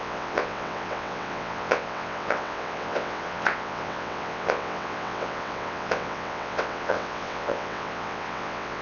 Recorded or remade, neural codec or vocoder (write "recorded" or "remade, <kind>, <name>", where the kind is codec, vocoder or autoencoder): remade, vocoder, WaveNeXt